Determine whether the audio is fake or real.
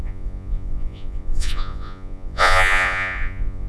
fake